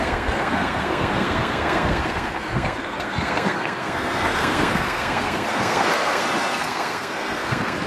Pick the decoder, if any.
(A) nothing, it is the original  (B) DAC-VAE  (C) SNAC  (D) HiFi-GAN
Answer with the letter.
C